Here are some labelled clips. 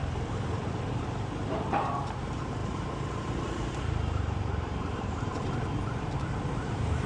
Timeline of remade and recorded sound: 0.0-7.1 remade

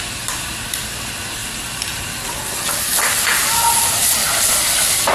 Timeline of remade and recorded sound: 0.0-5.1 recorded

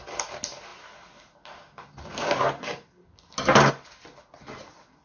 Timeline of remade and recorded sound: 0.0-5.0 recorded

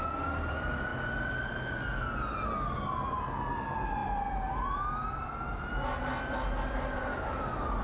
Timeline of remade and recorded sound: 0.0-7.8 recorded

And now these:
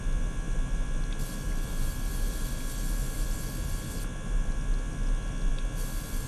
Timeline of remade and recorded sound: 0.0-6.3 recorded

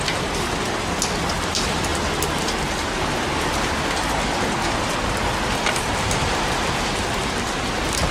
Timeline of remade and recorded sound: 0.0-1.9 remade; 1.9-3.3 recorded; 3.3-8.1 remade

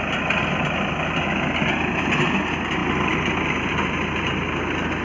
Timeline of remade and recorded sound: 0.0-5.0 recorded